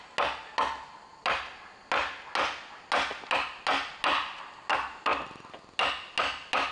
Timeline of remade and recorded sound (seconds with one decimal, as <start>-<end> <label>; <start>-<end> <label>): 0.0-6.7 recorded